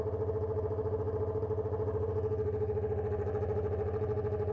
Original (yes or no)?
yes